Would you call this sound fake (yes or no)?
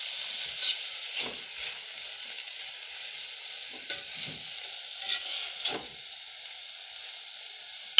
no